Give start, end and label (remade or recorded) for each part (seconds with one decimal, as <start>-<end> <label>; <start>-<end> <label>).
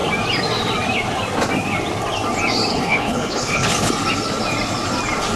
0.0-2.7 recorded; 2.7-3.9 remade; 3.9-5.4 recorded